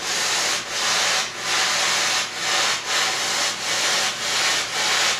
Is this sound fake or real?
real